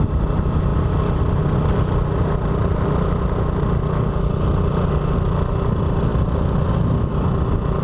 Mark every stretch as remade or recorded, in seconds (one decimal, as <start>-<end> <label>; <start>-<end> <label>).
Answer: 0.0-7.8 recorded